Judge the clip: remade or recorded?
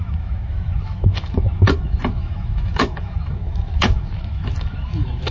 remade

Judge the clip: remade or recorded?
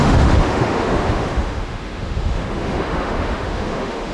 remade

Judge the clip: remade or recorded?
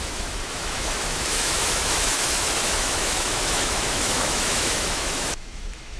remade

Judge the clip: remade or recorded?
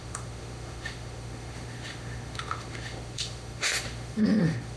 remade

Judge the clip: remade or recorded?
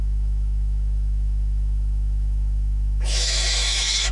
remade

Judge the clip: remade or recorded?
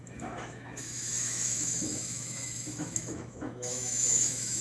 remade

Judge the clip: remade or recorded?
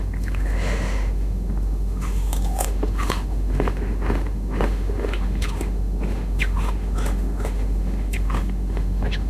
remade